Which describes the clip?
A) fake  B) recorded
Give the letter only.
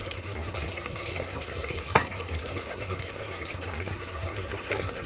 A